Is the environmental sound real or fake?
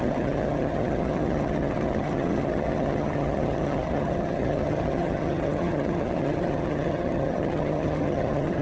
fake